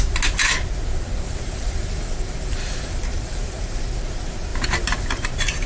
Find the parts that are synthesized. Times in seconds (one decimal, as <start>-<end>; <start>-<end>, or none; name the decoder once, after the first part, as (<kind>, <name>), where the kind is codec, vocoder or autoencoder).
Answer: 0.9-3.8 (vocoder, BigVGAN v2)